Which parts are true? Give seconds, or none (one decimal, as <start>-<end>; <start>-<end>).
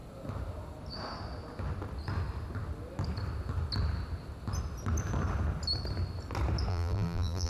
0.0-6.7